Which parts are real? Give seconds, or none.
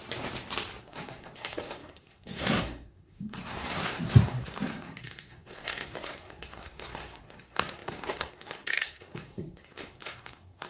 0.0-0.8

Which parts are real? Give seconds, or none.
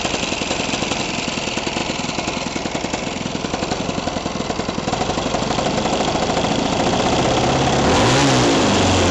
0.0-9.1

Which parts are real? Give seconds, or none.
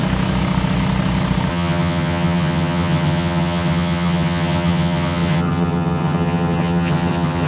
0.0-1.5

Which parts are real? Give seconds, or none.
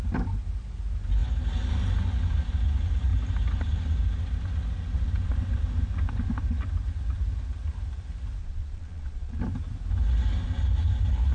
0.0-8.4; 9.4-11.3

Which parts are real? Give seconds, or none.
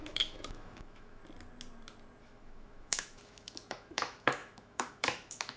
1.2-2.2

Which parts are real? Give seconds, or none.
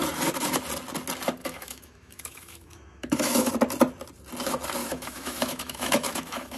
0.0-1.4; 3.5-4.8